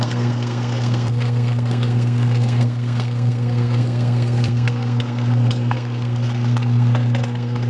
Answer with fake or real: fake